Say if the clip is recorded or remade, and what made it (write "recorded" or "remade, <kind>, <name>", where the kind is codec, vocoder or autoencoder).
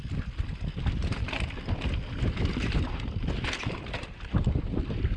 recorded